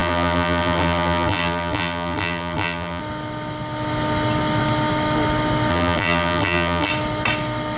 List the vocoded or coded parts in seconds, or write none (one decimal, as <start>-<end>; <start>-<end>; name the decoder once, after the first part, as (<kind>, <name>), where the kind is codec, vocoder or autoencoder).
0.0-3.0 (vocoder, BigVGAN v2); 5.7-6.9